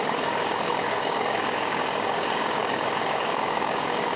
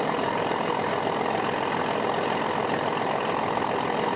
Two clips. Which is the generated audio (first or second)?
first